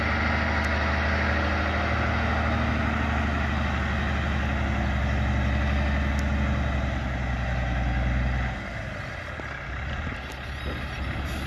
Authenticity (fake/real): real